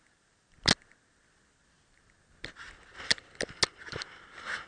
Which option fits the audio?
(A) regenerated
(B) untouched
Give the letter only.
B